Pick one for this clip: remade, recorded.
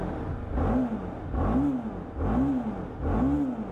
recorded